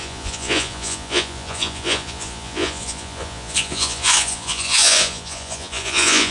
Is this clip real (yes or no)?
no